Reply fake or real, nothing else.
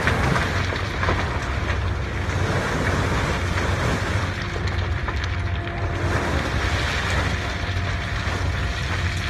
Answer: real